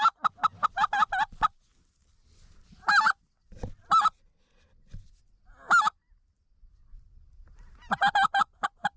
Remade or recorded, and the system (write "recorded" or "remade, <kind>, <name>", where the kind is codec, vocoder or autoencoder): recorded